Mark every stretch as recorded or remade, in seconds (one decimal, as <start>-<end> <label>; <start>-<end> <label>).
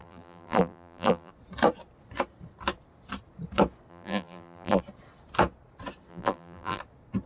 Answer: 0.0-1.3 remade; 1.3-3.9 recorded; 3.9-4.8 remade; 4.8-6.1 recorded; 6.1-6.8 remade; 6.8-7.3 recorded